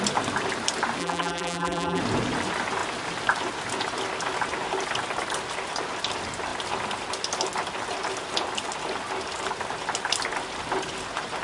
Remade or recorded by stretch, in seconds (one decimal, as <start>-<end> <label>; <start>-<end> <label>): 0.0-1.0 recorded; 1.0-2.0 remade; 2.0-11.4 recorded